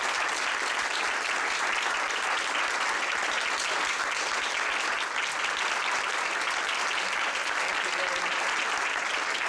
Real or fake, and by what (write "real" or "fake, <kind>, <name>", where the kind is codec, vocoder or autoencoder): real